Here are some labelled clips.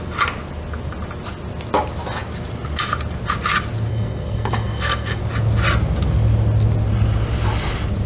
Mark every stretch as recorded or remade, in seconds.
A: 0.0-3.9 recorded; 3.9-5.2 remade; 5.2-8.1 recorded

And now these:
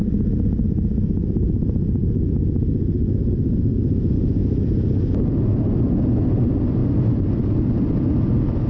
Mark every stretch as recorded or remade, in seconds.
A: 0.0-8.7 recorded

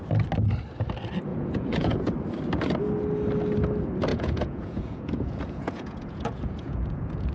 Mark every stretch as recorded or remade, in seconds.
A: 0.0-1.3 recorded; 1.3-2.1 remade; 2.1-4.1 recorded; 4.1-7.3 remade

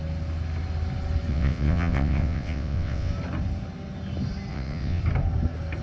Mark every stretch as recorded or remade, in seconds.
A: 0.0-1.3 recorded; 1.3-3.1 remade; 3.1-4.5 recorded; 4.5-5.0 remade; 5.0-5.8 recorded

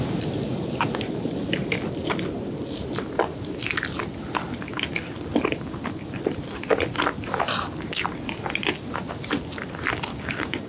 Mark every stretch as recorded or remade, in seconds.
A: 0.0-10.1 recorded; 10.1-10.7 remade